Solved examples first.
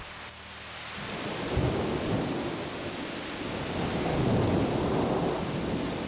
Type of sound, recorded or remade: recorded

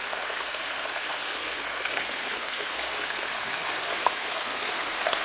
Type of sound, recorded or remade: remade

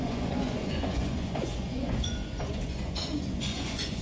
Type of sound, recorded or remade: remade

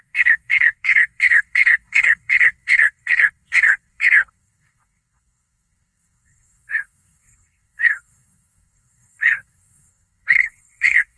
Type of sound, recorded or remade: remade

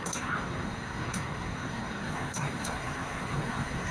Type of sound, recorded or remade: remade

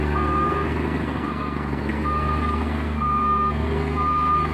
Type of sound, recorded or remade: remade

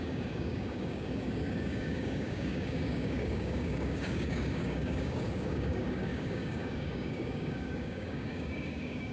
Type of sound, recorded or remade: remade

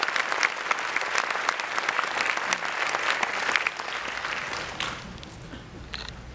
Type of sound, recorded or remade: recorded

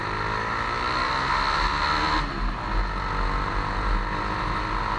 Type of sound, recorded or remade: recorded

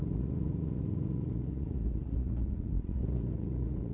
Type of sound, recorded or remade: remade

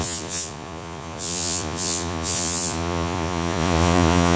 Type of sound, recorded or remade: remade